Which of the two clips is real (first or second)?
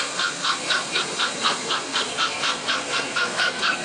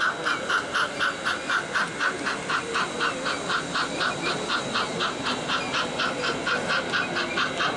second